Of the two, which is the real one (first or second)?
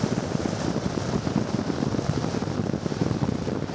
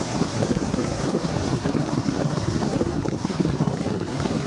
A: first